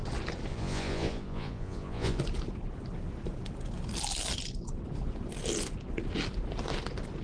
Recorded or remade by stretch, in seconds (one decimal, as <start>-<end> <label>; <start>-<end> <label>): 0.0-0.5 recorded; 0.5-2.2 remade; 2.2-7.2 recorded